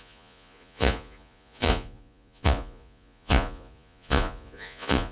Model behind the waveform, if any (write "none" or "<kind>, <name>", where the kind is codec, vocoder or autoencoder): vocoder, Vocos